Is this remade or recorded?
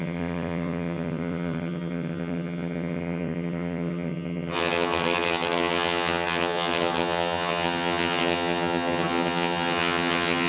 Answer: remade